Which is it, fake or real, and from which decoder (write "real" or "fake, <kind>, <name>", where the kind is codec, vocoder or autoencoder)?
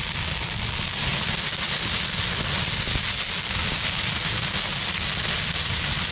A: real